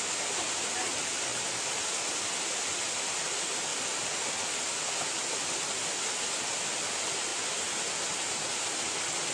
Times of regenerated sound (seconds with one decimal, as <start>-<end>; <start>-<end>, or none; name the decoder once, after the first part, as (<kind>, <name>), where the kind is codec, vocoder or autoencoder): none